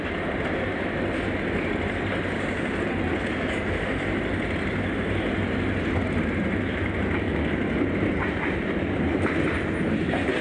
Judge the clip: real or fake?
real